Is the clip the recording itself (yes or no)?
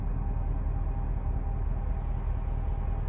yes